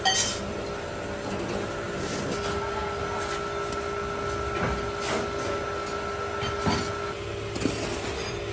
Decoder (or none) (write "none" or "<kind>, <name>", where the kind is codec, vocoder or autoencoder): none